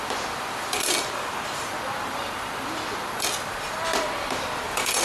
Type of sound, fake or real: fake